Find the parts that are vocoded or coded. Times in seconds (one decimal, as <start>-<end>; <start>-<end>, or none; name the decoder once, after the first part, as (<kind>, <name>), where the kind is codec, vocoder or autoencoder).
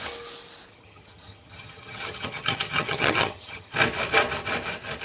0.7-3.7 (vocoder, HiFi-GAN)